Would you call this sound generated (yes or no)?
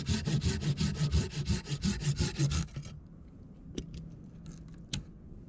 no